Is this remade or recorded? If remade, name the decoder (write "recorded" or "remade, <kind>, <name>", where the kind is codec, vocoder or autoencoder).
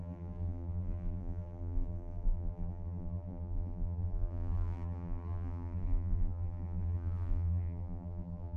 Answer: remade, vocoder, BigVGAN v2